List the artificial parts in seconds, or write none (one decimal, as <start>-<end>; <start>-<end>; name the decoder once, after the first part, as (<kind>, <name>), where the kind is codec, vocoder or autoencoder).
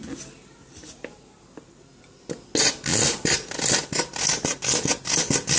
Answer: none